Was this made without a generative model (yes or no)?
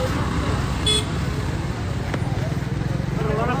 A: yes